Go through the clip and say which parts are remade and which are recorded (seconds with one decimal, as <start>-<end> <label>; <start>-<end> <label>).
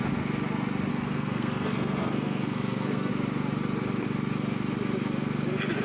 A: 0.0-0.9 recorded; 0.9-3.1 remade; 3.1-5.8 recorded